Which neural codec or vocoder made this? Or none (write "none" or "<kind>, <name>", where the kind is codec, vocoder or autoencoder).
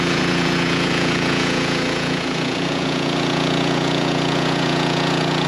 vocoder, Vocos